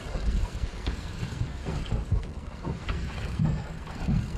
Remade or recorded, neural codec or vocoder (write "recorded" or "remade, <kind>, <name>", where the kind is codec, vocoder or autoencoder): remade, codec, SNAC